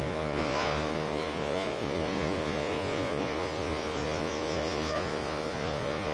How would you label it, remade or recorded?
remade